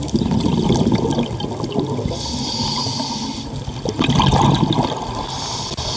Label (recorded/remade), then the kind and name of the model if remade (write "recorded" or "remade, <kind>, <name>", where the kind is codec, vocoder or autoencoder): recorded